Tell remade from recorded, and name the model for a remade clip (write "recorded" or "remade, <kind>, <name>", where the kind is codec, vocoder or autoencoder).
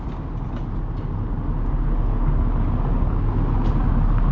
recorded